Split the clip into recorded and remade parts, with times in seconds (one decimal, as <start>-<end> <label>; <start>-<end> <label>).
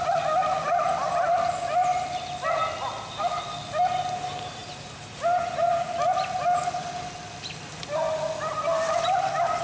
0.0-9.6 recorded